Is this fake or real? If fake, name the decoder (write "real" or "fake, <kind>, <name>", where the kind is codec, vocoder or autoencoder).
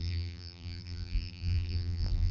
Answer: fake, vocoder, BigVGAN v2